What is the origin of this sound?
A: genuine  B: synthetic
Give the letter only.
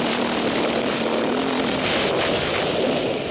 A